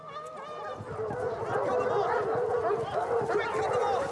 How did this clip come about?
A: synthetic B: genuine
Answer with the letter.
B